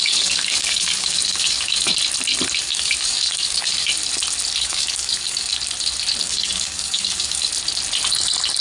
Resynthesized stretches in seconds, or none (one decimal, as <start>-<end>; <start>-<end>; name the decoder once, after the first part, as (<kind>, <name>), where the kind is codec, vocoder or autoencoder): 0.0-1.9 (codec, DAC); 2.6-3.9; 4.6-5.5; 6.2-7.5